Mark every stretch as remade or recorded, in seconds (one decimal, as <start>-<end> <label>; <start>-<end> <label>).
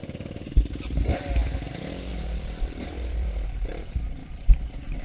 0.0-0.6 remade; 0.6-2.1 recorded; 2.1-3.8 remade; 3.8-4.2 recorded; 4.2-5.0 remade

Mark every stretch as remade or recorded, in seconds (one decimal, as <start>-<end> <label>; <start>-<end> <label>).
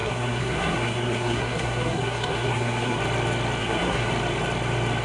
0.0-3.0 remade; 3.0-3.6 recorded; 3.6-4.1 remade; 4.1-5.0 recorded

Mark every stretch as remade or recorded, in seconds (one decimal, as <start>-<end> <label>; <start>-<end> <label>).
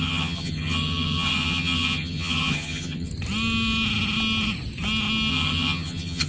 0.0-3.1 remade; 3.1-5.3 recorded; 5.3-6.3 remade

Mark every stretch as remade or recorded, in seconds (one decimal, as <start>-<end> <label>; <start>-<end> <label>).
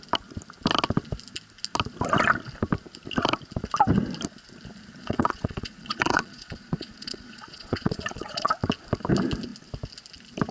0.0-5.0 recorded; 5.0-8.5 remade; 8.5-10.5 recorded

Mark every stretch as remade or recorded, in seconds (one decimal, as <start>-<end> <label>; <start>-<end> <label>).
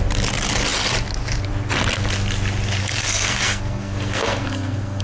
0.0-2.8 recorded; 2.8-5.0 remade